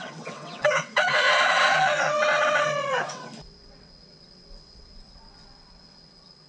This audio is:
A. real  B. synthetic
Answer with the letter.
B